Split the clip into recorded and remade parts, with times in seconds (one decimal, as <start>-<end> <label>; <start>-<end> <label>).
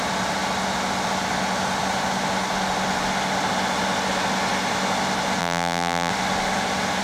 0.0-5.4 recorded; 5.4-6.1 remade; 6.1-7.0 recorded